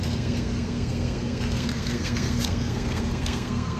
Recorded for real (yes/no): no